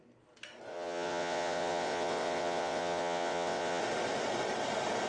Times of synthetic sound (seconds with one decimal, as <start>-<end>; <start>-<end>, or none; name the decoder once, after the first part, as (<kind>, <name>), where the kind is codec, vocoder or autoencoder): 0.7-3.8 (vocoder, WaveNeXt)